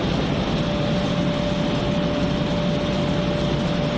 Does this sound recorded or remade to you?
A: recorded